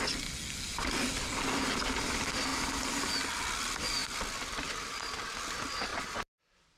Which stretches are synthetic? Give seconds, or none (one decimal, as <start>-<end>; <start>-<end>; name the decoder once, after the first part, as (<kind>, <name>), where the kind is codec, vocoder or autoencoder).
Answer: 2.5-3.1 (vocoder, BigVGAN v2); 4.0-5.1; 5.9-6.8